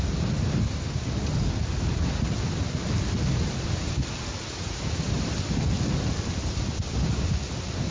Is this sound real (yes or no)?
yes